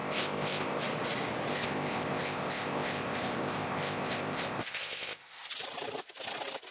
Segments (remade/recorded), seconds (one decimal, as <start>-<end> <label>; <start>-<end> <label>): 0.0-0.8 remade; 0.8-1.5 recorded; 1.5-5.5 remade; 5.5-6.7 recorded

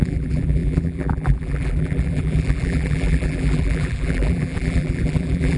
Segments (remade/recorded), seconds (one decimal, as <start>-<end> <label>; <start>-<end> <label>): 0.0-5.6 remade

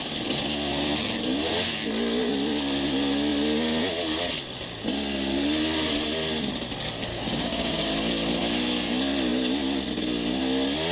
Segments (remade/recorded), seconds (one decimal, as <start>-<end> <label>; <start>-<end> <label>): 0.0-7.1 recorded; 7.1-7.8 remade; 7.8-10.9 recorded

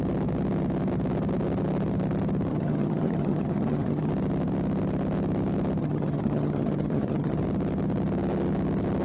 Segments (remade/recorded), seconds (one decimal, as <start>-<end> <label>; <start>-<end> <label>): 0.0-2.5 recorded; 2.5-4.1 remade; 4.1-5.8 recorded; 5.8-7.4 remade; 7.4-9.0 recorded